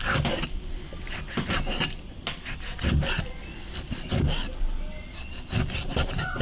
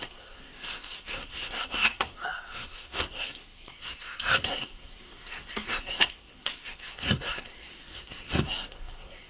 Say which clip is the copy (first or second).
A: second